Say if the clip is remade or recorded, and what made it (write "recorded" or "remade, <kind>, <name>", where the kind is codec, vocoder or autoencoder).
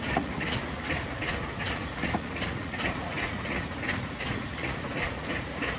remade, vocoder, Vocos